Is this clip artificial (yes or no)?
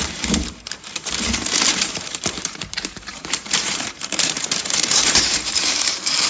yes